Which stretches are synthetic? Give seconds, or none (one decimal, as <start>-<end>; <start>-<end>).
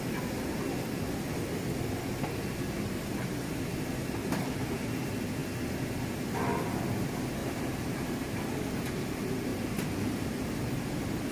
4.2-5.0; 7.4-8.5; 9.5-10.0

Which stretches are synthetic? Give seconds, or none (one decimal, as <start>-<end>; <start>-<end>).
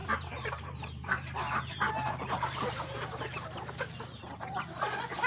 0.0-3.2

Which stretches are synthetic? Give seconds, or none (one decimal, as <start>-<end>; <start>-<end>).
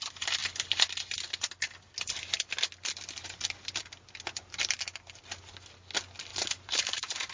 6.3-7.3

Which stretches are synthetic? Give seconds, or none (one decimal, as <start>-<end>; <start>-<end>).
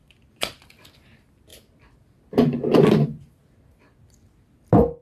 0.0-0.6